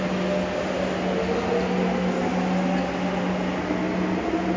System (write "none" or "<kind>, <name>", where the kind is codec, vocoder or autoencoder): none